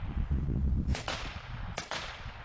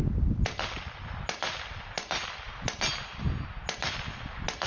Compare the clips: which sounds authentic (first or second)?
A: second